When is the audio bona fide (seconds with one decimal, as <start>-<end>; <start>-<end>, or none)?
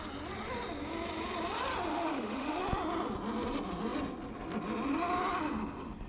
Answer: 0.0-1.9; 2.6-6.1